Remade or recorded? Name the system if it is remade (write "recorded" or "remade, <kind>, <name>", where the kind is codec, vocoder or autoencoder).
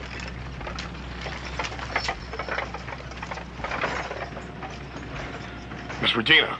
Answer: recorded